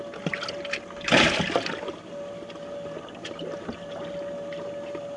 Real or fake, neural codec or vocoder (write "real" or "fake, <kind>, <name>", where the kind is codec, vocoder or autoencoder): real